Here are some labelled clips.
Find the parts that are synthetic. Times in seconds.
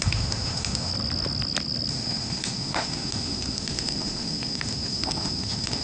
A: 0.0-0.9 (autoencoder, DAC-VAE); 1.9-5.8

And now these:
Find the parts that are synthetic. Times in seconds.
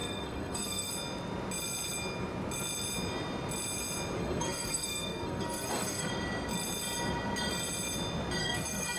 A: 0.0-0.9 (codec, SNAC); 4.2-6.1; 8.4-9.0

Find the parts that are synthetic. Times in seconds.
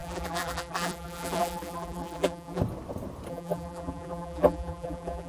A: 0.0-2.6 (vocoder, BigVGAN v2); 3.3-5.3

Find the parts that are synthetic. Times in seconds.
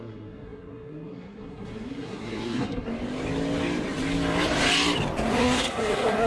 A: 0.0-2.9 (codec, SNAC); 5.3-6.3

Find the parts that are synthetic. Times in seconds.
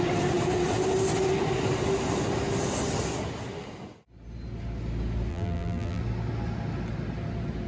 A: 5.3-6.0 (vocoder, BigVGAN v2)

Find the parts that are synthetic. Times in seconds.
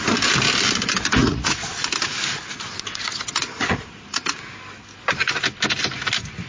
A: 1.2-1.7 (vocoder, Vocos); 3.5-4.4